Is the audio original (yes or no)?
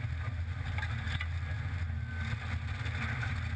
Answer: yes